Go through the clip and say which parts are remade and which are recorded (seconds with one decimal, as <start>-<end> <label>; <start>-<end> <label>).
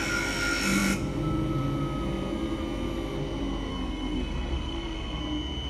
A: 0.0-3.7 recorded; 3.7-5.2 remade; 5.2-5.7 recorded